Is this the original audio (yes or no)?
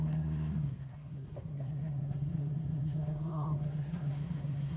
no